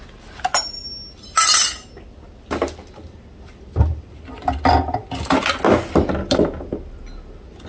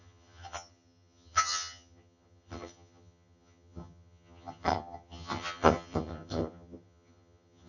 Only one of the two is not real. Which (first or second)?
second